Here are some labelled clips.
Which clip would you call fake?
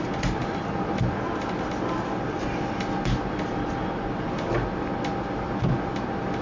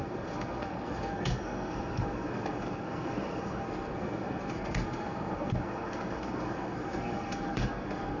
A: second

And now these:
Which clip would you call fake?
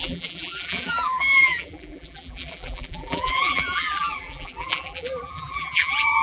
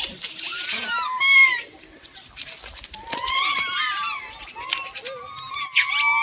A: first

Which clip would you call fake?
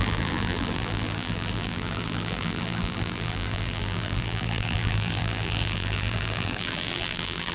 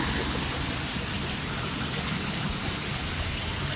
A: first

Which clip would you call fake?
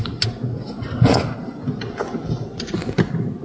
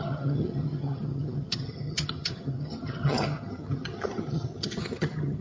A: second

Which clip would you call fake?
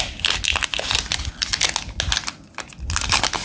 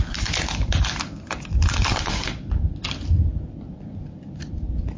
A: second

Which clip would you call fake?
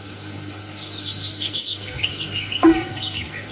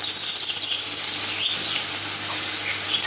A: first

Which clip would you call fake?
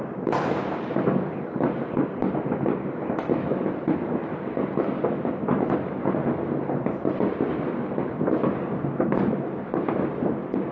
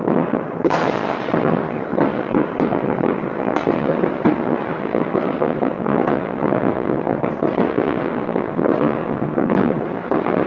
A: second